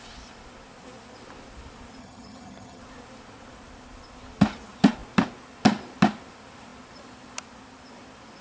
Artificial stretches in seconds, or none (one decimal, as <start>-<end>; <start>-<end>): 2.0-2.8